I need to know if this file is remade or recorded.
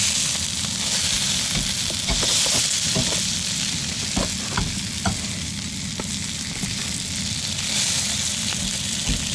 recorded